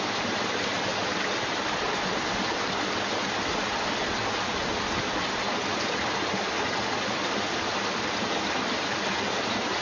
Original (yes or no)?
yes